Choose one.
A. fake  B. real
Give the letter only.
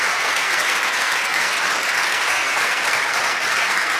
A